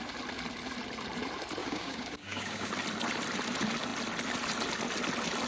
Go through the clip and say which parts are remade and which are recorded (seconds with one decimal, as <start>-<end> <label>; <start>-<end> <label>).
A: 0.0-1.6 recorded; 1.6-2.7 remade; 2.7-5.5 recorded